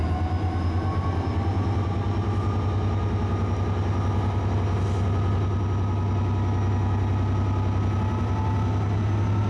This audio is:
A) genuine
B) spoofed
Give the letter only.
A